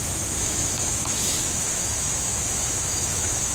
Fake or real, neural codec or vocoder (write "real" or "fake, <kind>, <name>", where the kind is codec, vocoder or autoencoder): fake, autoencoder, DAC-VAE